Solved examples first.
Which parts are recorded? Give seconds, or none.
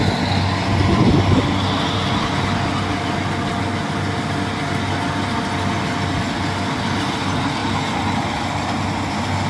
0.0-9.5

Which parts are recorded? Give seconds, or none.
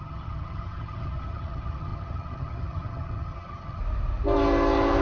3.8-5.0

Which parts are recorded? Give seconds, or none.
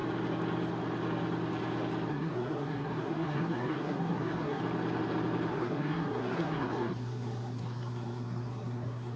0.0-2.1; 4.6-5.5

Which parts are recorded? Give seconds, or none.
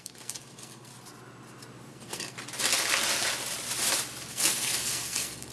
0.9-1.9; 2.4-4.3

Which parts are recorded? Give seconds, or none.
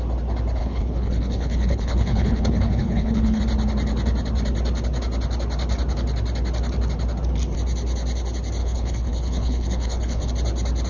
0.0-0.6; 3.4-8.6; 10.3-10.9